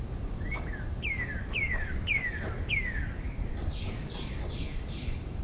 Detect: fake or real fake